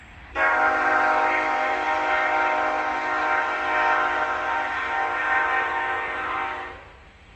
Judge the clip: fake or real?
real